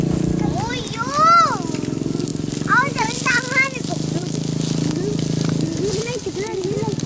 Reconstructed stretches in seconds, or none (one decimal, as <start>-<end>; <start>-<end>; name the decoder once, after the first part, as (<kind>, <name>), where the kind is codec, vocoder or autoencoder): none